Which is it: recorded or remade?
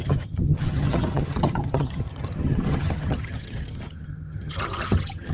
remade